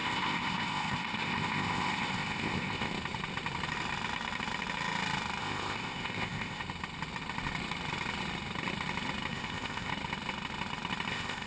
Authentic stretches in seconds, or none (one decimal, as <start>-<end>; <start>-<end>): 2.9-5.4; 6.6-9.3; 9.9-11.1